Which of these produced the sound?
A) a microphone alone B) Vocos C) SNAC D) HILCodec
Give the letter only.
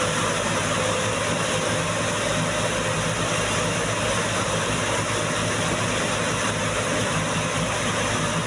A